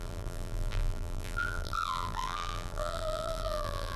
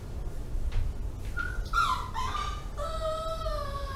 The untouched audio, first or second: second